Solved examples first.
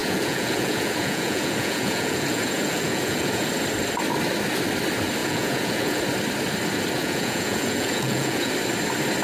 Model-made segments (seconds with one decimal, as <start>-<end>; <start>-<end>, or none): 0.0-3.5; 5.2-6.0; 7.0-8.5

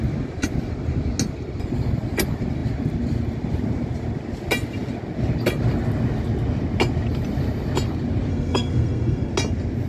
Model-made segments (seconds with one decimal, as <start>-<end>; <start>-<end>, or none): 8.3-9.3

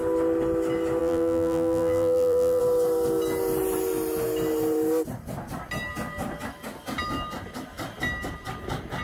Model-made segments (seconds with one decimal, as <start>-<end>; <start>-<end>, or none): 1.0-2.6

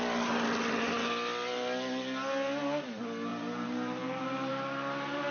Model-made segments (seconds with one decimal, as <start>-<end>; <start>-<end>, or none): 3.3-4.5

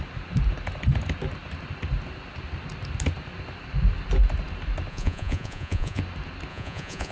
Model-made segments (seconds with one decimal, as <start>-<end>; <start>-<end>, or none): 4.9-6.0; 6.5-7.1